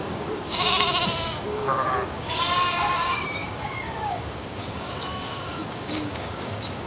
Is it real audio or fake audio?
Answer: fake